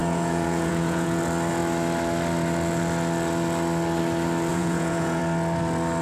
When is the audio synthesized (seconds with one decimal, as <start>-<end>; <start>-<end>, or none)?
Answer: 0.0-1.2; 4.5-5.2